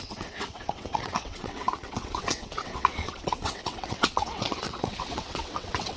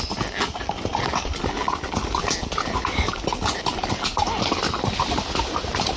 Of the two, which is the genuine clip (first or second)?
second